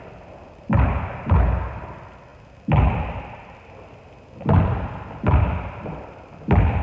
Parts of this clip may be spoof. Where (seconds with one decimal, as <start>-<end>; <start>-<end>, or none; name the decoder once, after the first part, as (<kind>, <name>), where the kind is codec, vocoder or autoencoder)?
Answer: none